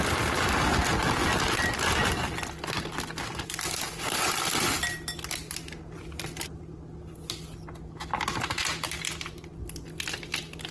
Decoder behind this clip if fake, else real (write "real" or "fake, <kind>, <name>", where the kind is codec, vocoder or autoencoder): real